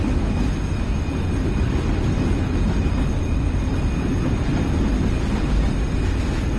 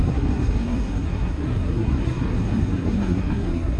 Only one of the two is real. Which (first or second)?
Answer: first